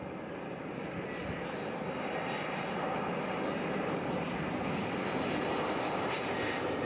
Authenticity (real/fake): real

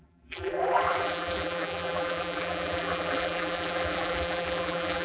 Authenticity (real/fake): fake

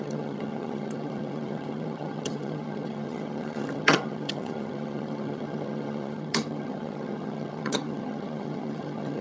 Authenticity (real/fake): fake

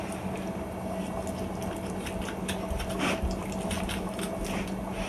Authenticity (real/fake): real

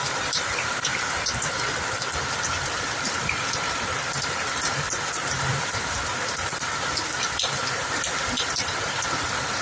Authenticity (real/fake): fake